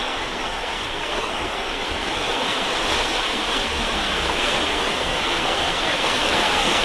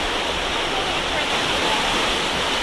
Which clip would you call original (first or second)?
second